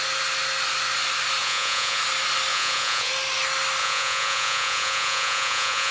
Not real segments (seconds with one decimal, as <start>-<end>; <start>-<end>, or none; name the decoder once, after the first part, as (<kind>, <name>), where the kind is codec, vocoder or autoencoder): 1.4-2.0 (vocoder, Vocos); 2.5-3.1; 3.8-5.9